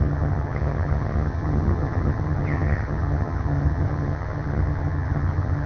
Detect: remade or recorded remade